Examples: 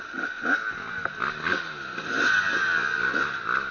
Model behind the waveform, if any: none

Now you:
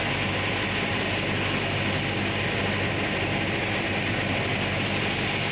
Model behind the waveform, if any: none